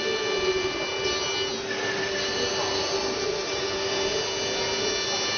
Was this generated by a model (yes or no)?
no